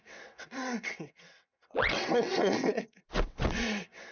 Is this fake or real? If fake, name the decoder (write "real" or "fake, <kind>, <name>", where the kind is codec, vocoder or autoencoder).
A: fake, vocoder, WaveNeXt